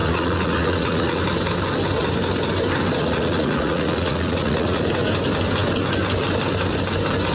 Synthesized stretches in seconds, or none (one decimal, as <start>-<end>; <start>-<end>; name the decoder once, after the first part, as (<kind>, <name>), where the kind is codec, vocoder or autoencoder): 0.0-1.2 (vocoder, Vocos); 3.0-4.8